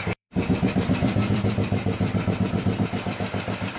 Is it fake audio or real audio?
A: fake